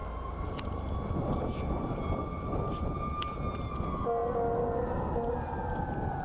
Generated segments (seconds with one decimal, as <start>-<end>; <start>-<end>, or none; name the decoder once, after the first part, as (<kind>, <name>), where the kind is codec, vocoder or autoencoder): none